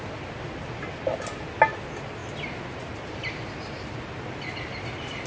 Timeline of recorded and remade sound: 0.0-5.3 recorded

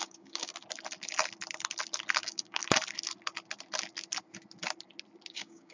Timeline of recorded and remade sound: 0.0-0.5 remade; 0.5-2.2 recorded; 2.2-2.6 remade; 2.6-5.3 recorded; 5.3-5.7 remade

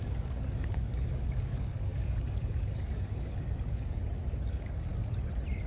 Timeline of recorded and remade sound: 0.0-4.0 remade; 4.0-4.5 recorded; 4.5-4.9 remade; 4.9-5.7 recorded

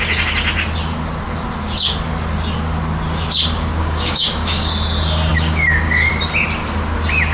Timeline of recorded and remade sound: 0.0-3.8 recorded; 3.8-4.7 remade; 4.7-5.3 recorded; 5.3-6.1 remade; 6.1-7.3 recorded

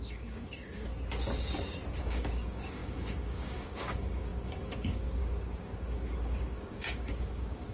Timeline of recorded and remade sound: 0.0-0.9 remade; 0.9-2.0 recorded; 2.0-7.7 remade